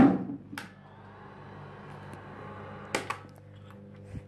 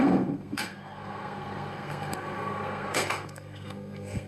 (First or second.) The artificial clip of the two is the second